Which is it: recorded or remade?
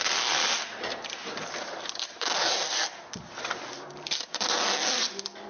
recorded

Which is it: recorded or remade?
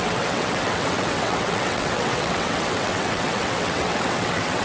remade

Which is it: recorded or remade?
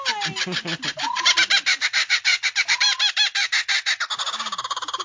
recorded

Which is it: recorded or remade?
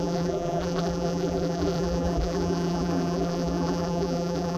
remade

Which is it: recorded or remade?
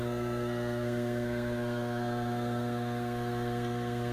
remade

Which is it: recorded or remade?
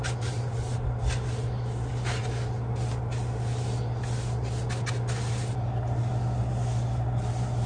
recorded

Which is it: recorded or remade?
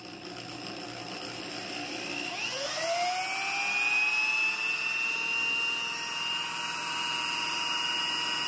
recorded